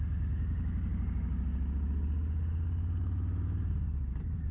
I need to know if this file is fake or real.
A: real